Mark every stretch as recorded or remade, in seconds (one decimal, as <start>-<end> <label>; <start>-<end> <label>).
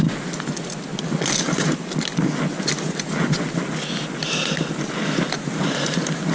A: 0.0-6.3 recorded